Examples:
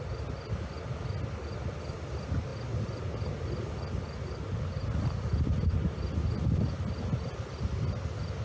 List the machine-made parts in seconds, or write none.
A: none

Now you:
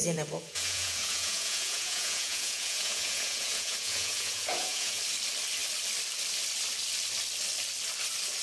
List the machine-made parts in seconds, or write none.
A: 0.0-5.0 (vocoder, Vocos)

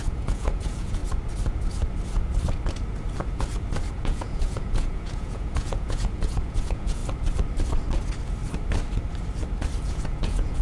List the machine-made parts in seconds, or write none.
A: 0.0-1.0 (vocoder, Vocos); 3.9-7.0; 9.8-10.6